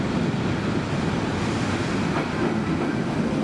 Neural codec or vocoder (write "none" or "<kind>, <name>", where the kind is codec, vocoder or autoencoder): none